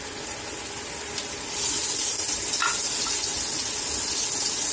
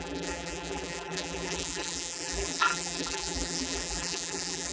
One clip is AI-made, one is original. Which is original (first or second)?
first